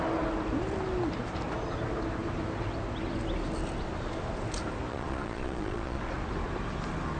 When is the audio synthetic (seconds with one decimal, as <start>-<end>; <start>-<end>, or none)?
4.9-6.0